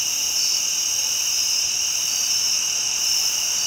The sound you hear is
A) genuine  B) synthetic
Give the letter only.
B